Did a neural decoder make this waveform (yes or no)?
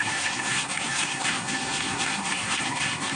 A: yes